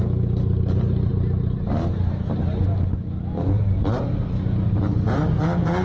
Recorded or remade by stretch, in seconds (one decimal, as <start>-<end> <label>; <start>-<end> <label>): 0.0-5.8 recorded